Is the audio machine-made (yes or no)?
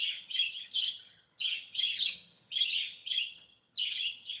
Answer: yes